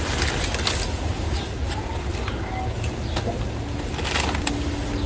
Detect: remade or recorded recorded